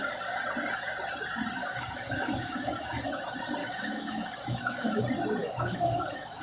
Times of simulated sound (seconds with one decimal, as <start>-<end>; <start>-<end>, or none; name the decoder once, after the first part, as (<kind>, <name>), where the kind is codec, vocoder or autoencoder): 1.6-3.2 (autoencoder, DAC-VAE); 3.6-5.0; 5.4-6.4